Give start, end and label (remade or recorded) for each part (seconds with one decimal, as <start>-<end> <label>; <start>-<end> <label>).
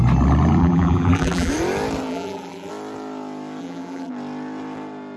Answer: 0.0-0.6 recorded; 0.6-1.5 remade; 1.5-2.1 recorded; 2.1-2.7 remade; 2.7-3.6 recorded; 3.6-4.1 remade; 4.1-5.2 recorded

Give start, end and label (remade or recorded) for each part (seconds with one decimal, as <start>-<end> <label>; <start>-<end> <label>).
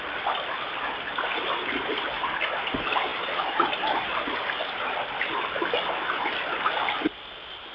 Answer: 0.0-7.7 recorded